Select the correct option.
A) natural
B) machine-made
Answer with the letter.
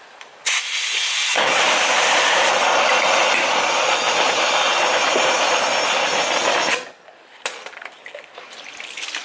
A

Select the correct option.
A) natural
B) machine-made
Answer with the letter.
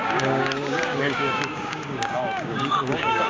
B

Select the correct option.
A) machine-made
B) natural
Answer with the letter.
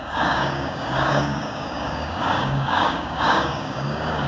A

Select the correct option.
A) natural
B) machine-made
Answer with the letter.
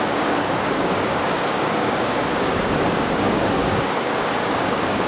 B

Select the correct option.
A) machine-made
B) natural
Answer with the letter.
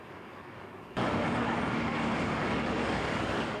A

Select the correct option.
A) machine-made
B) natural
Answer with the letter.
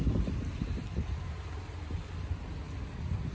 B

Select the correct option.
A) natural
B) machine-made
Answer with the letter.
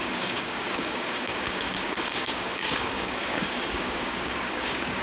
B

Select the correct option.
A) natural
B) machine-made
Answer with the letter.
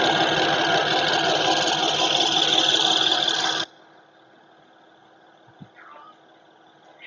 A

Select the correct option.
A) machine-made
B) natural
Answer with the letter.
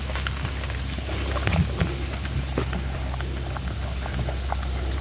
B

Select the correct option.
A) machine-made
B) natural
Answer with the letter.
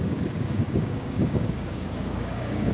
A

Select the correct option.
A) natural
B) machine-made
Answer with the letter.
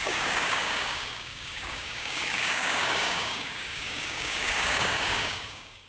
B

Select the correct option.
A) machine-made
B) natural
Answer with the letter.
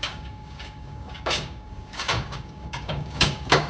A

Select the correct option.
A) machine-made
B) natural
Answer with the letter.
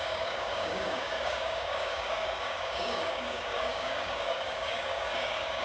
A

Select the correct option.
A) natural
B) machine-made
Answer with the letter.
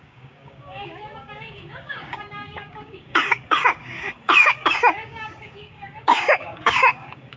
B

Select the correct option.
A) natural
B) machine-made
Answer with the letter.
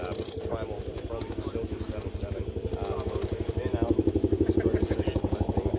A